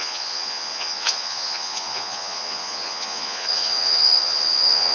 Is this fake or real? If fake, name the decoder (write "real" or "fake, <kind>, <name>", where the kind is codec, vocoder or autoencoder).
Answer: fake, vocoder, Vocos